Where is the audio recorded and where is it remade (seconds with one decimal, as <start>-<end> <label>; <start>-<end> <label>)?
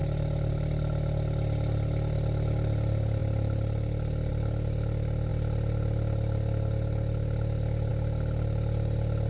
0.0-9.3 recorded